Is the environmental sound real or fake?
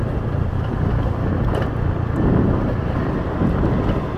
real